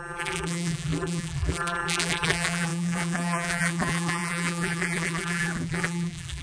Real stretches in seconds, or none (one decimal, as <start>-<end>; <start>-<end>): none